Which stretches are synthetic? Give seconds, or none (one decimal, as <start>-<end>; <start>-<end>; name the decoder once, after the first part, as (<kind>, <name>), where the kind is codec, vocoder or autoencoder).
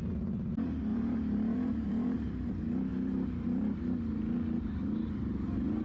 0.9-2.5 (vocoder, BigVGAN v2); 2.9-3.8